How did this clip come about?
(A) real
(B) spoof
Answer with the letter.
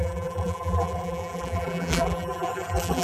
B